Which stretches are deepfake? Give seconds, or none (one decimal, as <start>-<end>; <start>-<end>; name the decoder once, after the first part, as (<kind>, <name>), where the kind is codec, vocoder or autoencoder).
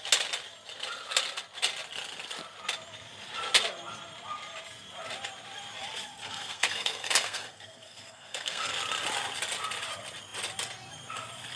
6.2-8.7 (codec, SNAC)